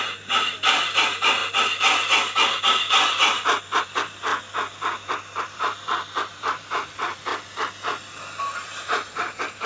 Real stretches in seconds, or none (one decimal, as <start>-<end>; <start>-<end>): 1.4-3.8; 4.3-5.4; 7.3-8.4